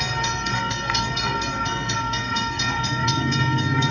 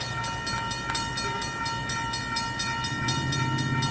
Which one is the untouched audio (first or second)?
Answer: second